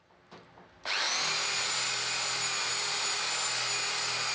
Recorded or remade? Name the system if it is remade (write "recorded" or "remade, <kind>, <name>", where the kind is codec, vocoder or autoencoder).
recorded